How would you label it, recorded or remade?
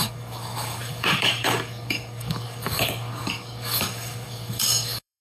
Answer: remade